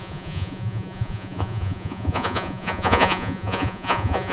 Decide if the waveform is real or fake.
fake